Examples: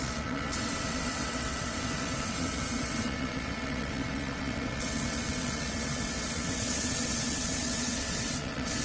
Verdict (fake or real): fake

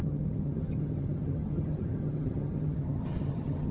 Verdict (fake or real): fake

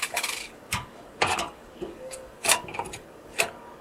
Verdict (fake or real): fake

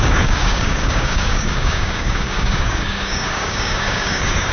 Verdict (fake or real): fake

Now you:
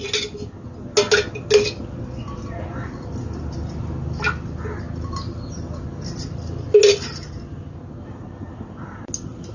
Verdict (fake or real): real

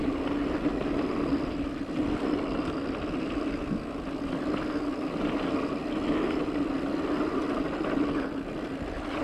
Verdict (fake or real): real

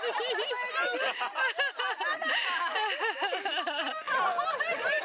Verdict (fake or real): real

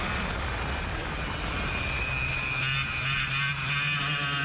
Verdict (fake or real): real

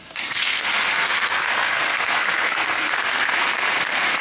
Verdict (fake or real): fake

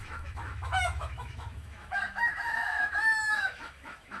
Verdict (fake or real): fake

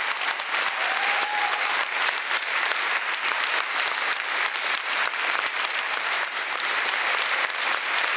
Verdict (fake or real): fake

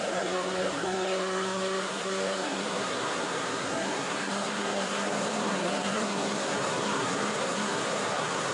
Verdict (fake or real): fake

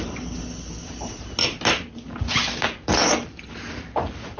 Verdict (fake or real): real